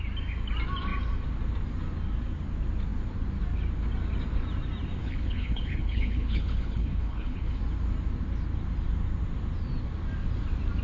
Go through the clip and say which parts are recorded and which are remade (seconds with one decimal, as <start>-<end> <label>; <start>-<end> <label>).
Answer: 0.0-5.0 recorded; 5.0-7.6 remade; 7.6-10.8 recorded